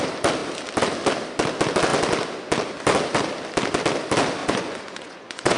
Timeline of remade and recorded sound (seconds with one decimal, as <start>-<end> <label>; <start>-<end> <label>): 0.0-4.4 recorded; 4.4-5.6 remade